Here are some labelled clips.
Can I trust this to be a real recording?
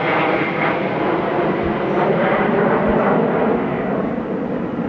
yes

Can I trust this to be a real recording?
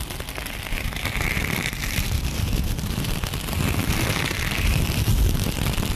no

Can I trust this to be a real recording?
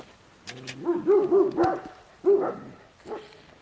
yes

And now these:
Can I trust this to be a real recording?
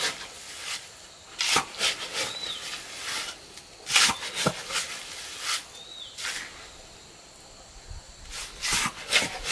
yes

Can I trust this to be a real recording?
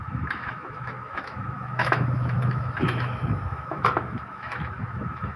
no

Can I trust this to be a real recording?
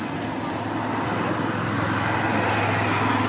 yes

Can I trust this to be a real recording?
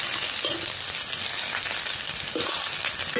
yes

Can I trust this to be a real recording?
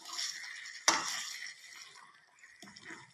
yes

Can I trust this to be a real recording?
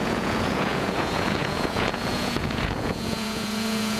no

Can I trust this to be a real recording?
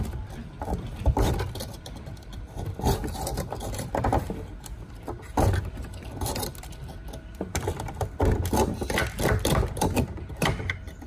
no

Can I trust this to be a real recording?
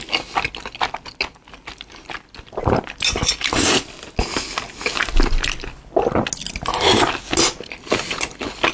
yes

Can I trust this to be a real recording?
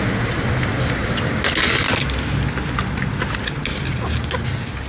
yes